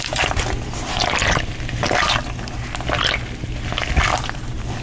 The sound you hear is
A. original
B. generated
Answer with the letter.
A